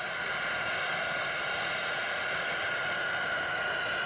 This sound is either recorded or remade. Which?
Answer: recorded